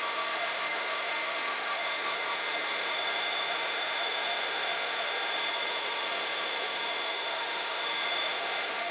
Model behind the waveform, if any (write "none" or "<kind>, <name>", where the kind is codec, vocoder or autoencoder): autoencoder, DAC-VAE